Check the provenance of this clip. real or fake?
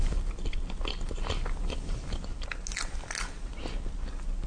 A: real